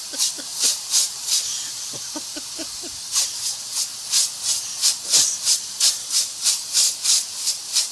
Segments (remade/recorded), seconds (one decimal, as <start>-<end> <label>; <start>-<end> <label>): 0.0-0.5 recorded; 0.5-3.3 remade; 3.3-7.9 recorded